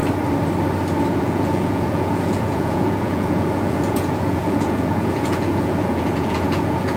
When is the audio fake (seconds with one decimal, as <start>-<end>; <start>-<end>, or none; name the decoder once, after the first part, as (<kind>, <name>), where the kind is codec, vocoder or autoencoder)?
1.1-7.0 (vocoder, Vocos)